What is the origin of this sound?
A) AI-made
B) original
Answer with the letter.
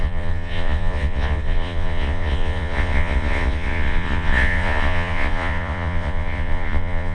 A